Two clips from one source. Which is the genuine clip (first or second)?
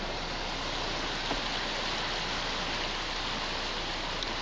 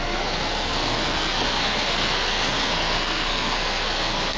first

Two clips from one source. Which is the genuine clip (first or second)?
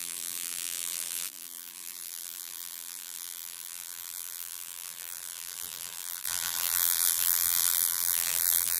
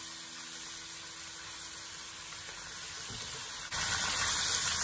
second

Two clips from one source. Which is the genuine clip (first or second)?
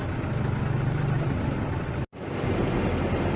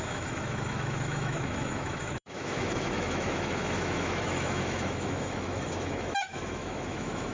first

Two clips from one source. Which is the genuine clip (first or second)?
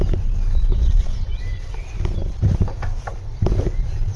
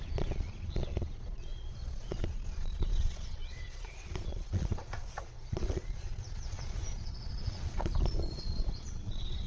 first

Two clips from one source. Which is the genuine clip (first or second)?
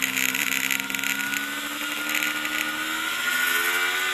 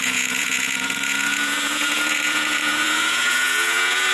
first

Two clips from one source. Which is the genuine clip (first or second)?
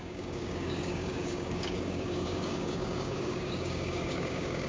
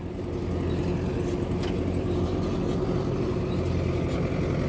second